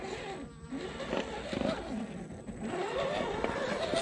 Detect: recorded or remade recorded